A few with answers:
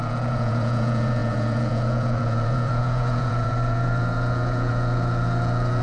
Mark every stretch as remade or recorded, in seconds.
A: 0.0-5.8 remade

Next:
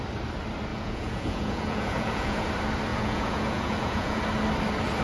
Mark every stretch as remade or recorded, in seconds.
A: 0.0-0.7 recorded; 0.7-2.5 remade; 2.5-2.9 recorded; 2.9-4.2 remade; 4.2-5.0 recorded

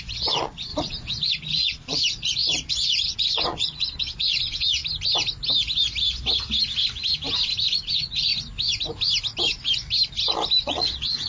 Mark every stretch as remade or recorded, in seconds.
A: 0.0-4.8 remade; 4.8-7.9 recorded; 7.9-8.3 remade; 8.3-10.6 recorded; 10.6-11.3 remade